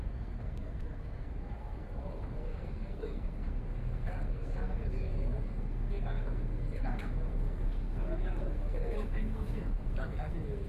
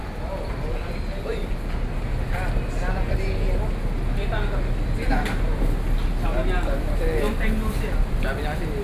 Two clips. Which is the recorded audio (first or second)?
second